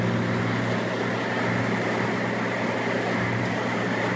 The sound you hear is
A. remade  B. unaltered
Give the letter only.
B